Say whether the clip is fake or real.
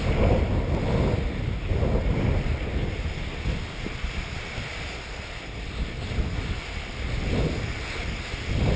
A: real